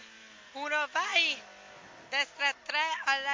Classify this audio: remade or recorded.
recorded